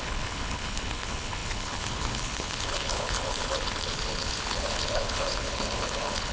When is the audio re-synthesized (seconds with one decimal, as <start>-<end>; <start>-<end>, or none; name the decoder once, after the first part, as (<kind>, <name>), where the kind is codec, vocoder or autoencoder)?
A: 0.0-6.3 (codec, HILCodec)